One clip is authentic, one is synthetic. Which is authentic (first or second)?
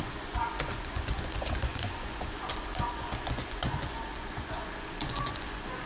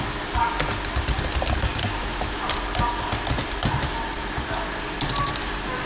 second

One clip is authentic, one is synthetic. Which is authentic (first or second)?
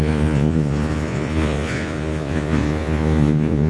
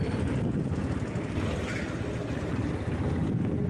second